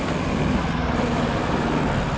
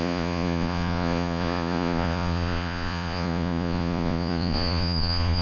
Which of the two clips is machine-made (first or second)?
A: second